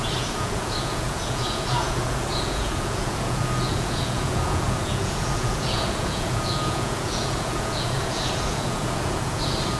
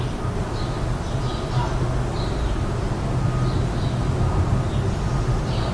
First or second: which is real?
second